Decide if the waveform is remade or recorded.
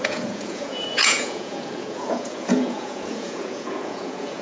remade